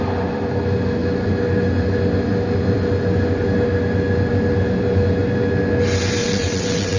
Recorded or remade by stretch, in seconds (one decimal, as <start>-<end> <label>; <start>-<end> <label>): 0.0-6.2 recorded; 6.2-7.0 remade